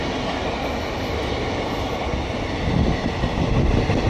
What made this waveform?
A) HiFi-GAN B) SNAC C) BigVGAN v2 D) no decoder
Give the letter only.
D